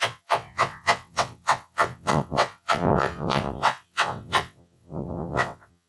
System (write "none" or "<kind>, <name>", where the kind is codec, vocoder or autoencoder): vocoder, WaveNeXt